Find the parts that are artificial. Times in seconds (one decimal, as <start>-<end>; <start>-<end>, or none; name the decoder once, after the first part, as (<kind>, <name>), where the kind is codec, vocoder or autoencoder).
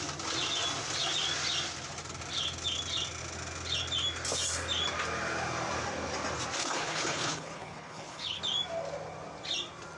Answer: 6.6-8.4 (codec, HILCodec)